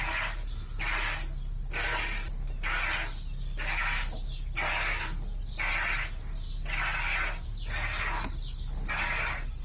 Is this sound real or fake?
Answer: real